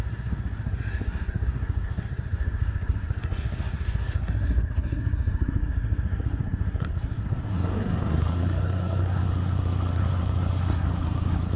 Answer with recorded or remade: remade